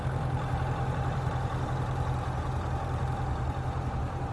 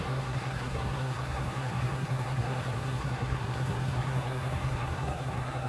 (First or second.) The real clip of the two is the first